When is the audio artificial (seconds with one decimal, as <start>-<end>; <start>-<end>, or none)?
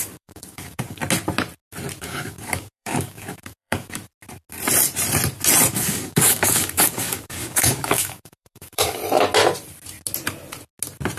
0.0-1.0; 2.0-4.0; 5.7-9.0